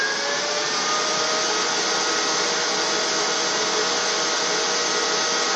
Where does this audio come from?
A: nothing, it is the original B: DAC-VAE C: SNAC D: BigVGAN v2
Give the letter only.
A